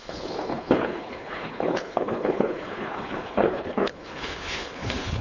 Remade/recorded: remade